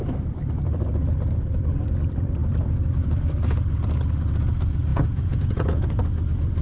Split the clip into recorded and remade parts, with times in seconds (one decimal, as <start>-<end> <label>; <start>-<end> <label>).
0.0-4.9 recorded; 4.9-5.9 remade; 5.9-6.6 recorded